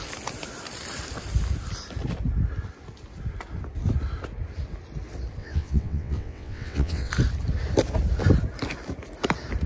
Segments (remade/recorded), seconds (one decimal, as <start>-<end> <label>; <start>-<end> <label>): 0.0-5.4 recorded; 5.4-7.1 remade; 7.1-9.7 recorded